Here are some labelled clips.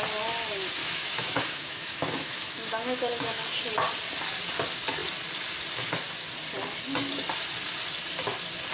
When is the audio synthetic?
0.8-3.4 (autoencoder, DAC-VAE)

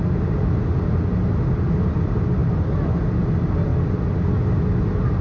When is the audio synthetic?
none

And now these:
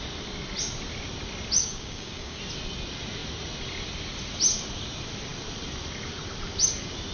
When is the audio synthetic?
1.6-2.4 (codec, DAC)